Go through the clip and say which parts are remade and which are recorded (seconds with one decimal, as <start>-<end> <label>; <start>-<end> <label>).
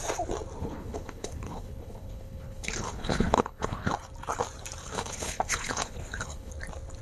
0.0-0.6 recorded; 0.6-3.9 remade; 3.9-4.8 recorded; 4.8-6.5 remade; 6.5-7.0 recorded